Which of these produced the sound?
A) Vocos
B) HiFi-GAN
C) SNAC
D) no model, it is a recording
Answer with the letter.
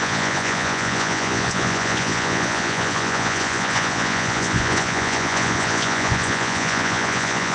A